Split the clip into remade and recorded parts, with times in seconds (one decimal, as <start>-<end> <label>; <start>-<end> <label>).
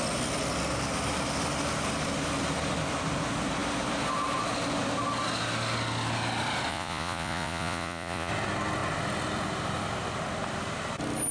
0.0-6.7 recorded; 6.7-8.3 remade; 8.3-11.3 recorded